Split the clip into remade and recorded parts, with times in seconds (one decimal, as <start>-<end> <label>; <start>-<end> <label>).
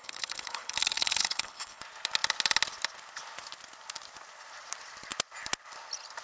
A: 0.0-1.8 remade; 1.8-6.2 recorded